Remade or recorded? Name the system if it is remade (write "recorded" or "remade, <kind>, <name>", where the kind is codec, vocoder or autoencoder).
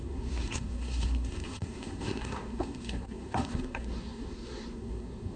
remade, codec, SNAC